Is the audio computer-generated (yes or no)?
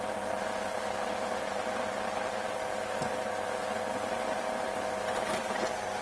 no